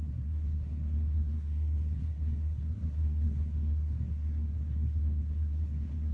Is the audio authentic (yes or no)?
no